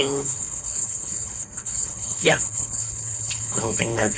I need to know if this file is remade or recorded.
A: remade